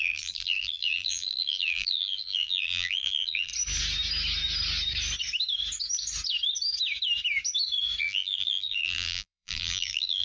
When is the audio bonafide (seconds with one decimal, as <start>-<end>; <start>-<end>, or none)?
3.5-8.0